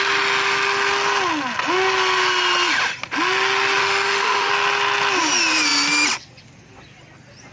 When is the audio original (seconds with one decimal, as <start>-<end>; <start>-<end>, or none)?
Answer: 0.0-3.8; 4.5-7.5